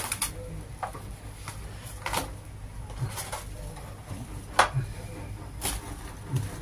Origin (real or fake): real